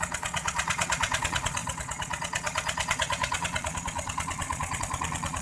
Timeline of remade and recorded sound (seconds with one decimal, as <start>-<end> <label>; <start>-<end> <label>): 0.0-5.4 remade